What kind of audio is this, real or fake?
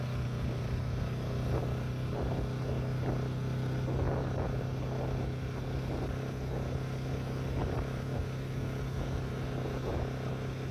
real